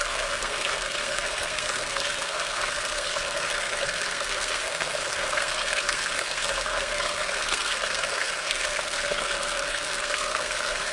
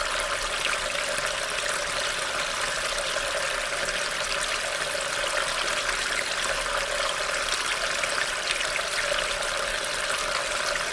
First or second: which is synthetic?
first